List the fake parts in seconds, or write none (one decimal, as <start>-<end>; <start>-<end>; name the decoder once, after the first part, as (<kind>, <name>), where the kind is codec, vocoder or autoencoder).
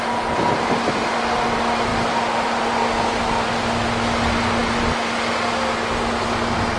none